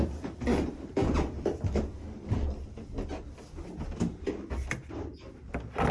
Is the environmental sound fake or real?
real